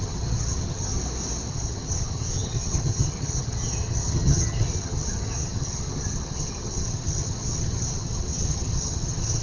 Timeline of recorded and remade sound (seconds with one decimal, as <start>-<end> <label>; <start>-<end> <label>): 0.0-1.0 remade; 1.0-1.5 recorded; 1.5-9.4 remade